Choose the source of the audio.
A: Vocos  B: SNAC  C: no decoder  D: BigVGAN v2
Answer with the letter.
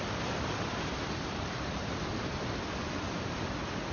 C